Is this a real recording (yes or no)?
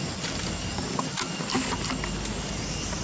no